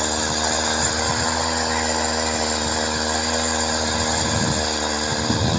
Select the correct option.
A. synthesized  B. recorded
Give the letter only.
B